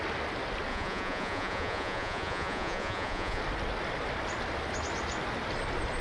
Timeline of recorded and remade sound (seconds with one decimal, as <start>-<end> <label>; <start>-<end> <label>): 0.0-0.7 recorded; 0.7-3.4 remade; 3.4-6.0 recorded